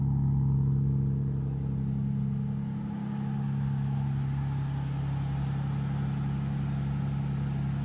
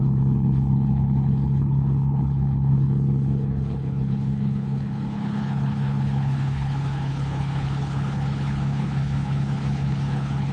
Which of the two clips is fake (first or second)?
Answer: second